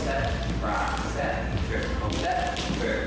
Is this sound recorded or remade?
remade